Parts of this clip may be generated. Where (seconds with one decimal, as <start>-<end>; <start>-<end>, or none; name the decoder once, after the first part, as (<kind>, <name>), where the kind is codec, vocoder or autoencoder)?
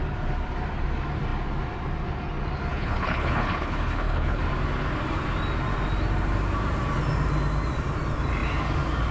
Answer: 2.7-4.4 (codec, HILCodec)